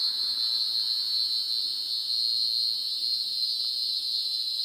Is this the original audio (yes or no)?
yes